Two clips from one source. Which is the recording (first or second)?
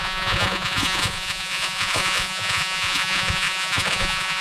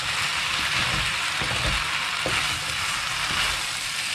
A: second